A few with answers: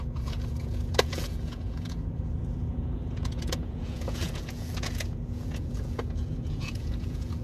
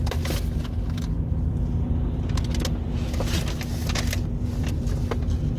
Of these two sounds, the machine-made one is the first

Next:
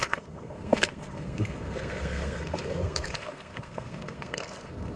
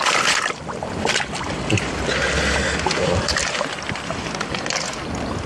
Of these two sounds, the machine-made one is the first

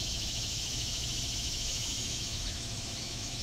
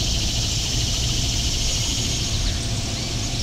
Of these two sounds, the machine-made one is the first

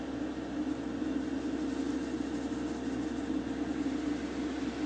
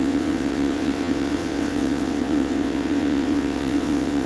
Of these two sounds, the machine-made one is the second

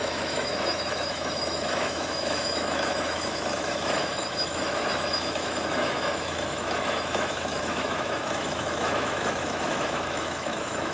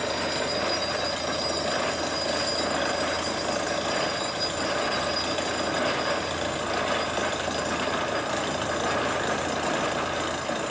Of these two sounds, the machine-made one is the first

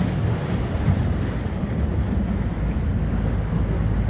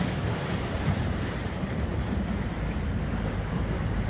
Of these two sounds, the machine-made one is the second